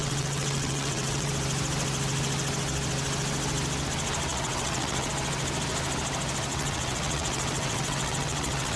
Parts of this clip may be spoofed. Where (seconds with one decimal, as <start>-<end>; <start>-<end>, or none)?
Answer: 0.0-1.3; 4.3-5.1; 6.5-8.8